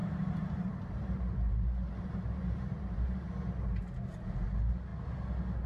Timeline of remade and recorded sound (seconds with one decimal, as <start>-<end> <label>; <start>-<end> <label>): 0.0-3.3 remade; 3.3-5.7 recorded